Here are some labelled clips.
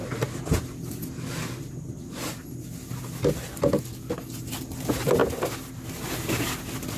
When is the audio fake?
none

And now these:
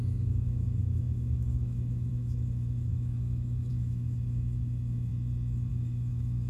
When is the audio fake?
0.0-5.1 (autoencoder, DAC-VAE); 5.7-6.5

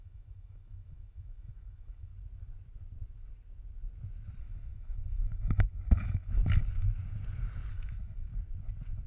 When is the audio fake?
0.0-2.1 (autoencoder, DAC-VAE); 4.4-6.4; 7.7-8.3

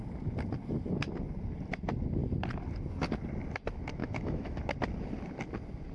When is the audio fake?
4.0-4.6 (autoencoder, DAC-VAE)

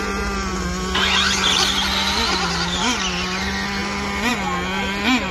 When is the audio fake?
none